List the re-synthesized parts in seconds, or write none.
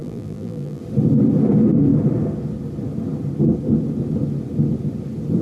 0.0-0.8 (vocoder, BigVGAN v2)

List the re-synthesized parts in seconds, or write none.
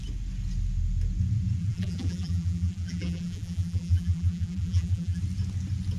1.6-5.2 (vocoder, BigVGAN v2)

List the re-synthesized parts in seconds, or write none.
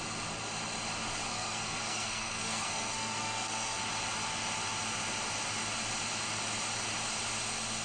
1.3-3.8 (codec, SNAC)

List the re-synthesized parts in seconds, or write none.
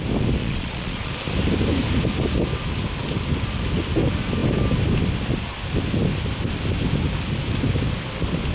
0.4-1.1 (vocoder, Vocos)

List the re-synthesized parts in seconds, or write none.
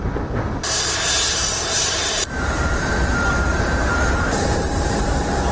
1.4-3.1 (vocoder, BigVGAN v2); 3.5-5.5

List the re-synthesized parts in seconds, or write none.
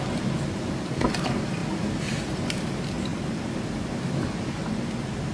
1.6-2.6 (vocoder, BigVGAN v2)